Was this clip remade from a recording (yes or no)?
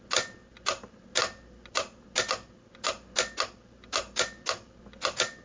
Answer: no